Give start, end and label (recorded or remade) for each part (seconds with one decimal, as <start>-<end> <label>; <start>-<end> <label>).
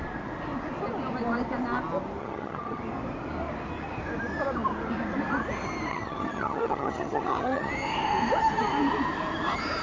0.0-2.2 recorded; 2.2-2.8 remade; 2.8-5.9 recorded; 5.9-7.7 remade; 7.7-9.8 recorded